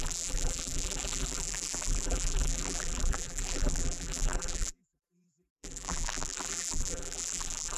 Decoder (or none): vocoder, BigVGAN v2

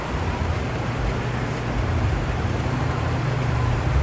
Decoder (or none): vocoder, BigVGAN v2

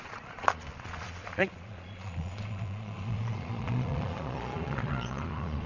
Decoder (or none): vocoder, Vocos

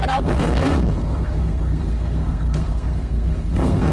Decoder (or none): codec, SNAC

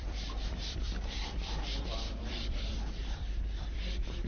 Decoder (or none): vocoder, BigVGAN v2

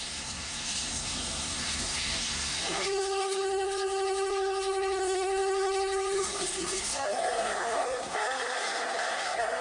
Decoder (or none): codec, SNAC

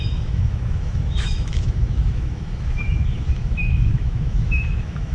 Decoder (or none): autoencoder, DAC-VAE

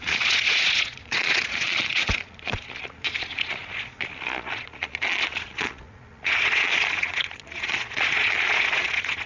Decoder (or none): vocoder, Vocos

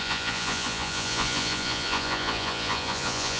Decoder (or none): vocoder, Vocos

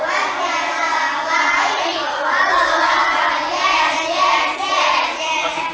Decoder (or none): vocoder, Vocos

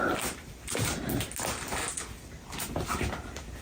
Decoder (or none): none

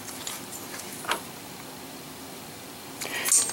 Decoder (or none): none